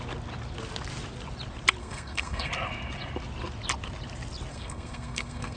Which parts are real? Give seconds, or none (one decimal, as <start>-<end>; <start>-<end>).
0.0-1.8; 2.5-4.5